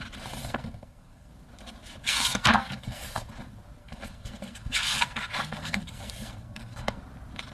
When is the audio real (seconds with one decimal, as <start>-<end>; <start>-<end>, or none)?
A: 0.0-0.4; 1.3-2.0; 3.3-3.8; 7.0-7.5